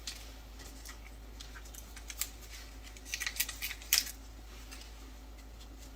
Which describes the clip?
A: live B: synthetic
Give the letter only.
A